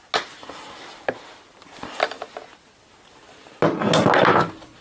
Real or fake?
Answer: real